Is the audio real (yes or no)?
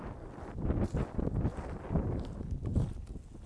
yes